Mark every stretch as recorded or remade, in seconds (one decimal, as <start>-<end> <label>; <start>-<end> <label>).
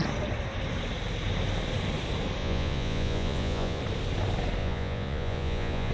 0.0-2.4 recorded; 2.4-3.8 remade; 3.8-4.6 recorded; 4.6-5.9 remade